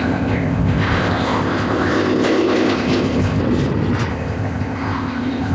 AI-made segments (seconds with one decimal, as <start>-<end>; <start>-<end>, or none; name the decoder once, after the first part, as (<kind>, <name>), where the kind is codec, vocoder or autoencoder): 0.0-3.4 (codec, ZipCodec); 4.1-5.5